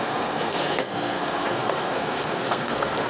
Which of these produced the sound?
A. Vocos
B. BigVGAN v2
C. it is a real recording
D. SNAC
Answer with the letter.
D